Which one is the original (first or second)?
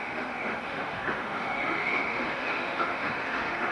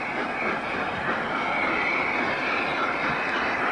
second